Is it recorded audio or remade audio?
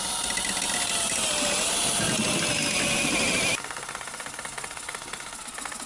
recorded